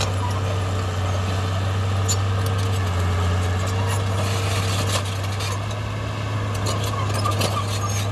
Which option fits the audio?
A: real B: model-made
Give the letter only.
A